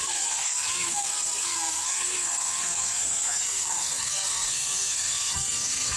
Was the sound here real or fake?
fake